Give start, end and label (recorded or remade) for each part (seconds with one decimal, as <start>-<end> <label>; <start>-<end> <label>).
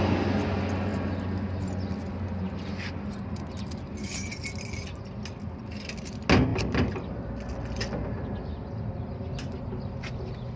0.0-6.5 recorded; 6.5-7.4 remade; 7.4-10.6 recorded